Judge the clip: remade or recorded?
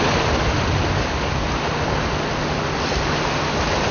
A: recorded